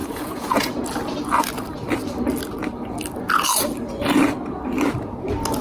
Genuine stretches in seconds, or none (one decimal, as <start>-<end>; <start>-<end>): 0.7-5.6